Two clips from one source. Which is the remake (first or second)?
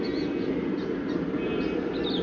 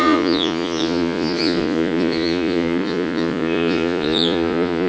second